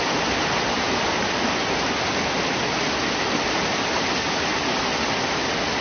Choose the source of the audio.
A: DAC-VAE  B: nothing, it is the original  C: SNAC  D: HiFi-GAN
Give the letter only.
B